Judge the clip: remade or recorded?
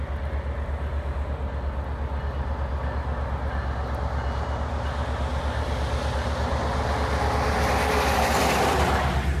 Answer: recorded